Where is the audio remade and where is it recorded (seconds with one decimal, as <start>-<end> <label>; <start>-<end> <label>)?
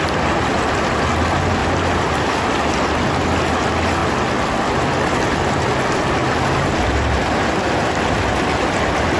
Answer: 0.0-9.2 recorded